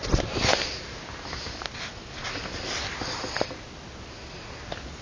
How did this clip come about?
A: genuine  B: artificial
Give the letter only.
A